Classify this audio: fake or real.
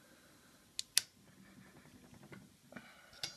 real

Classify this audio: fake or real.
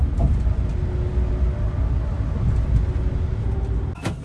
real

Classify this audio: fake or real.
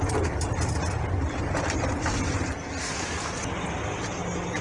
real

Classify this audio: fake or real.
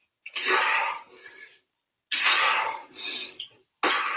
real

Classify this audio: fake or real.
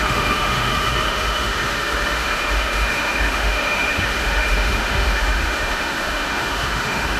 fake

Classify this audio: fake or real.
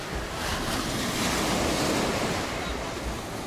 real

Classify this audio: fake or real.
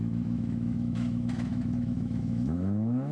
fake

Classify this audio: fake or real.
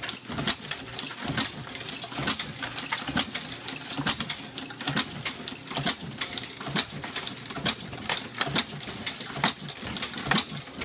real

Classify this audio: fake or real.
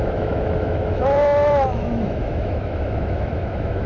fake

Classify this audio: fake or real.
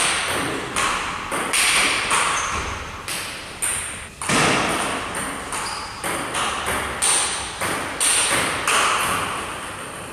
real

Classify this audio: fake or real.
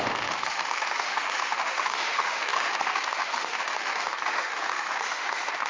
fake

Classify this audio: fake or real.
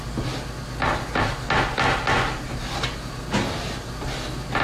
real